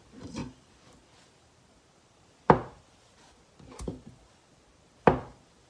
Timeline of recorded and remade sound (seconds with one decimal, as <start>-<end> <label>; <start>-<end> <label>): 0.0-5.7 remade